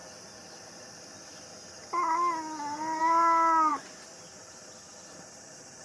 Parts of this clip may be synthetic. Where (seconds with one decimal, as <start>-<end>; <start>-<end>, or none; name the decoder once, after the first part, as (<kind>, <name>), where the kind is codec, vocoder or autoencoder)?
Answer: 3.7-5.8 (vocoder, BigVGAN v2)